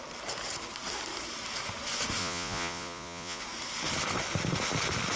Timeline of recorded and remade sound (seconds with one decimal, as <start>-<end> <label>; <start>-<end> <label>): 0.0-2.2 recorded; 2.2-3.4 remade; 3.4-5.2 recorded